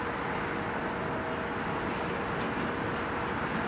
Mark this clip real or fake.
real